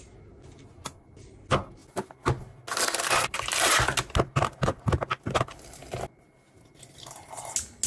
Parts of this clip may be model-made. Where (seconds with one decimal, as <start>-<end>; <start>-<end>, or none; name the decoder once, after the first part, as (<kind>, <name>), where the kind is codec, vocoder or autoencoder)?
none